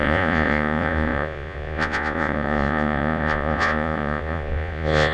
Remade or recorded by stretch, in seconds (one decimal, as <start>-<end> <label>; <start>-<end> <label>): 0.0-5.1 remade